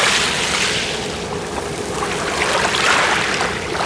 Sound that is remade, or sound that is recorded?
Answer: recorded